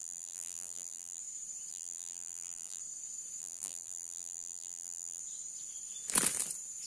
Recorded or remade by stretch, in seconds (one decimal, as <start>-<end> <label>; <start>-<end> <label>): 0.0-1.2 remade; 1.2-1.7 recorded; 1.7-2.8 remade; 2.8-3.4 recorded; 3.4-5.2 remade; 5.2-6.9 recorded